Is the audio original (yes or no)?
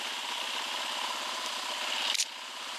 yes